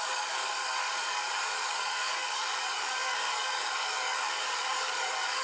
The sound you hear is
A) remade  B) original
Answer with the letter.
A